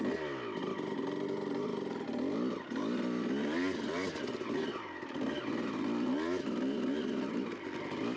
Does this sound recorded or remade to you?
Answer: recorded